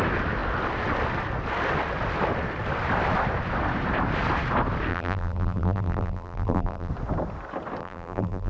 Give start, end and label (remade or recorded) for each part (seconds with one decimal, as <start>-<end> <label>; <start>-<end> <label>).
0.0-4.9 recorded; 4.9-6.9 remade; 6.9-7.8 recorded; 7.8-8.5 remade